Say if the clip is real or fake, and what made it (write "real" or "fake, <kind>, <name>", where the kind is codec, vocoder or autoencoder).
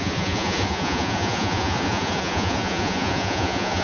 fake, vocoder, Vocos